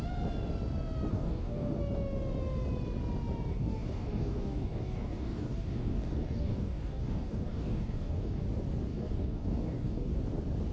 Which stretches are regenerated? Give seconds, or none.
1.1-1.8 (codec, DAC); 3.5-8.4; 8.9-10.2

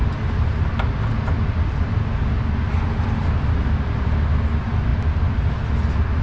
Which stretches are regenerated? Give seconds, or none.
none

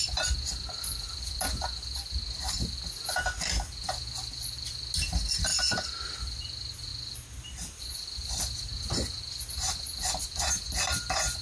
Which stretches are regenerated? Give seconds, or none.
5.5-6.0 (vocoder, BigVGAN v2)

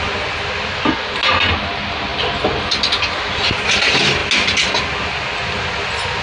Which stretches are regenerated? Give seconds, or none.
none

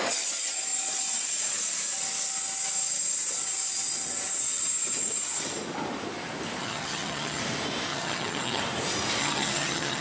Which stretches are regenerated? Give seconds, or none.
6.6-7.4 (vocoder, HiFi-GAN); 7.9-8.6; 9.2-10.0